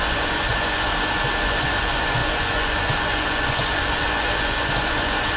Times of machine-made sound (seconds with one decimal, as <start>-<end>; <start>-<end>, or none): 0.0-0.9; 1.4-5.4